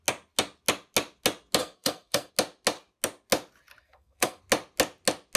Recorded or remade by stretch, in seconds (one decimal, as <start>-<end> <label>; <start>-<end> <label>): 0.0-1.6 recorded; 1.6-2.3 remade; 2.3-3.8 recorded; 3.8-4.4 remade; 4.4-5.4 recorded